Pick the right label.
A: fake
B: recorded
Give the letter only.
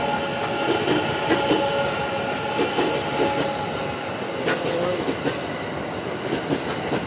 B